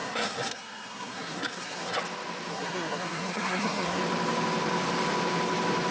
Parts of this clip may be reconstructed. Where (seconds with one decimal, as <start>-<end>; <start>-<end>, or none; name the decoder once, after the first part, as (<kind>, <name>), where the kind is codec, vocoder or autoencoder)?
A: 0.0-2.0 (codec, SNAC); 2.5-4.0